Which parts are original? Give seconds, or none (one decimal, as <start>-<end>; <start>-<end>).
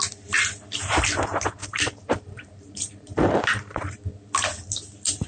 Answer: 0.0-1.6; 3.9-5.3